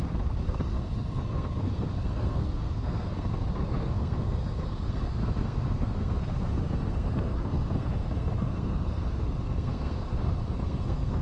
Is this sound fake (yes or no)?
yes